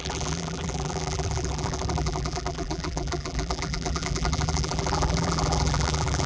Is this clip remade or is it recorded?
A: remade